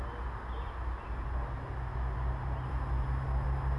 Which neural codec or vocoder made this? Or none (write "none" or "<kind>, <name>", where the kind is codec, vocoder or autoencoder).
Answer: none